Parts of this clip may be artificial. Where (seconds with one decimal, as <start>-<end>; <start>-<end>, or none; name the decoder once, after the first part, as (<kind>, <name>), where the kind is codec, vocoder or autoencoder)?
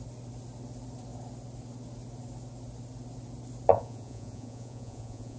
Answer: 3.7-5.4 (vocoder, Vocos)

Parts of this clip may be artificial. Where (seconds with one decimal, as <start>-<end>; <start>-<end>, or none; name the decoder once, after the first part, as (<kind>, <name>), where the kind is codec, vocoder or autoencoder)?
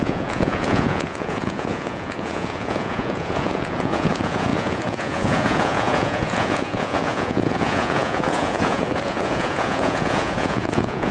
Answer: 0.0-11.1 (vocoder, Vocos)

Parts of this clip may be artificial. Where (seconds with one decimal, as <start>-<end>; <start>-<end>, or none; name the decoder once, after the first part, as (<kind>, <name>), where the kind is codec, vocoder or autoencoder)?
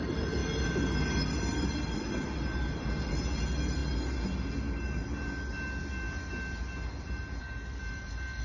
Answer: none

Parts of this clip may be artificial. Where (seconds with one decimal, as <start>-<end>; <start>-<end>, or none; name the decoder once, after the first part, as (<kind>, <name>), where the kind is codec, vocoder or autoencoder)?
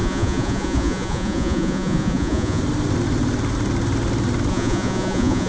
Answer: 0.0-2.6 (vocoder, Vocos); 4.5-5.5